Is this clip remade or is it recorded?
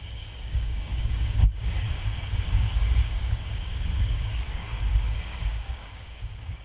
remade